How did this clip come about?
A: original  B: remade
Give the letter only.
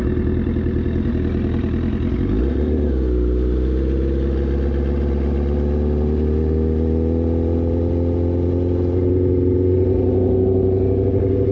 A